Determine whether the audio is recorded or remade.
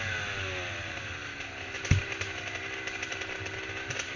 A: recorded